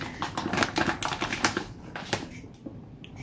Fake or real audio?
real